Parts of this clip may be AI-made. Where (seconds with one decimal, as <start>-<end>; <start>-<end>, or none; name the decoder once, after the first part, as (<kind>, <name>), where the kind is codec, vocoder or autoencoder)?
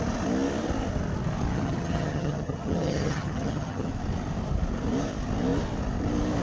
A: 1.5-3.9 (vocoder, HiFi-GAN)